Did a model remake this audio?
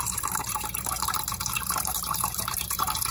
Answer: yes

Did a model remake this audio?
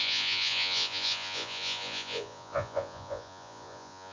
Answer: yes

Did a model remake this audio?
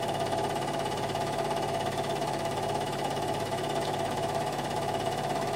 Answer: yes